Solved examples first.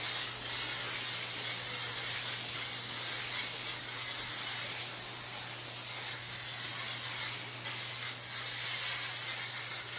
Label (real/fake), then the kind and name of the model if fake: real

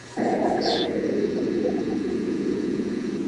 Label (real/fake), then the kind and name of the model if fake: fake, vocoder, Vocos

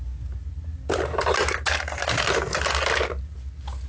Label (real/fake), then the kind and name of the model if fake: real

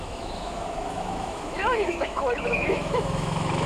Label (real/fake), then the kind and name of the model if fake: fake, autoencoder, DAC-VAE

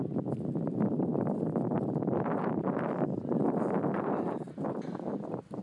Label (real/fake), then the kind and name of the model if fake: real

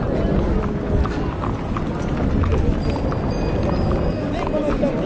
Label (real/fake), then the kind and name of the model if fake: real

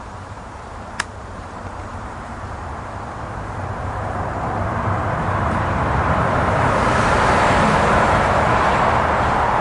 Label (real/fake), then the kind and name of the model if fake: fake, vocoder, BigVGAN v2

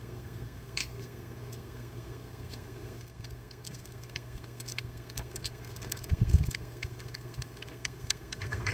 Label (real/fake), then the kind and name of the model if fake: fake, codec, SNAC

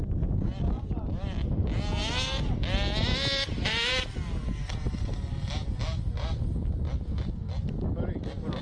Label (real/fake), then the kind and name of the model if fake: real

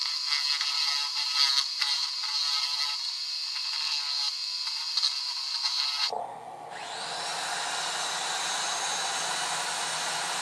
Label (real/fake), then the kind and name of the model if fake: real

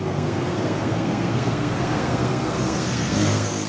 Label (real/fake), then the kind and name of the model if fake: fake, codec, SNAC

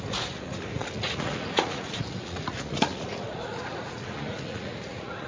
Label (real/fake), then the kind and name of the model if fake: fake, vocoder, Vocos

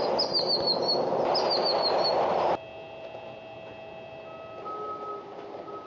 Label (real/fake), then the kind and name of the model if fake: real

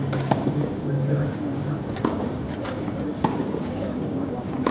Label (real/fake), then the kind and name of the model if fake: fake, codec, DAC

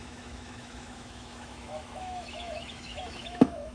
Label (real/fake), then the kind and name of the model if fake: fake, autoencoder, DAC-VAE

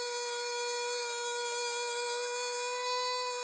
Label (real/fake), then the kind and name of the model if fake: fake, codec, DAC